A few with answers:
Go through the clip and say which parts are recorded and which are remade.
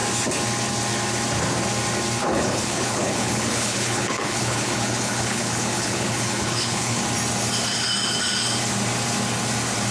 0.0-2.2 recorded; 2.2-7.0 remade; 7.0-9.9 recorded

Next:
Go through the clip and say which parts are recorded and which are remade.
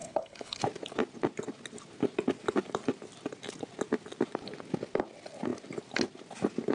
0.0-0.6 remade; 0.6-6.7 recorded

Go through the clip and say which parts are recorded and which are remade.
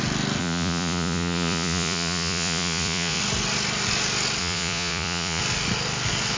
0.0-0.4 recorded; 0.4-3.2 remade; 3.2-4.4 recorded; 4.4-5.4 remade; 5.4-6.4 recorded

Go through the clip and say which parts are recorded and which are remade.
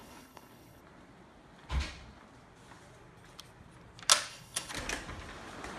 0.0-0.8 remade; 0.8-4.3 recorded; 4.3-4.7 remade; 4.7-5.8 recorded